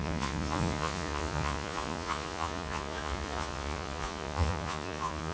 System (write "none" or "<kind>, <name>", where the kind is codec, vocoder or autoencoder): vocoder, Vocos